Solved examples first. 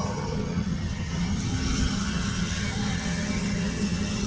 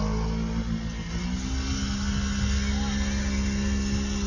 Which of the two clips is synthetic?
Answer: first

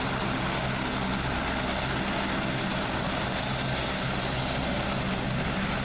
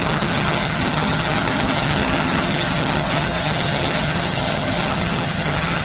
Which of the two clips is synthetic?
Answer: second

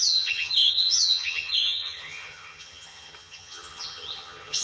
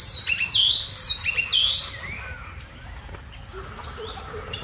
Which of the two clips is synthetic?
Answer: first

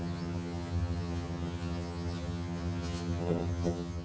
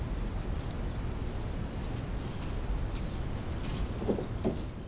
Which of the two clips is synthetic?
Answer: first